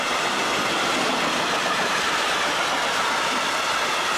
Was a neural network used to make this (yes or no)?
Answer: no